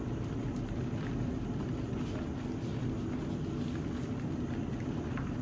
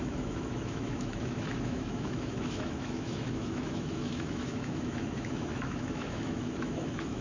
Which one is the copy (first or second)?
second